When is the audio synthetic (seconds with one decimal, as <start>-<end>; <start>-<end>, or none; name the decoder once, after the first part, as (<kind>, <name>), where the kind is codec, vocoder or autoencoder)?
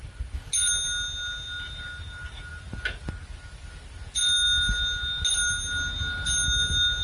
none